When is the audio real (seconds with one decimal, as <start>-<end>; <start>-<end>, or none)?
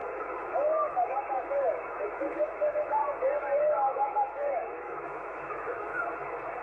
3.0-3.6; 5.9-6.6